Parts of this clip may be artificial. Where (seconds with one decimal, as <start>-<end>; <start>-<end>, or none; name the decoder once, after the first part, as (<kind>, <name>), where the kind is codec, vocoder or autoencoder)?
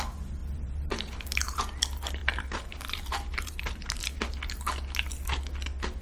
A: 0.4-1.6 (vocoder, BigVGAN v2); 2.2-4.3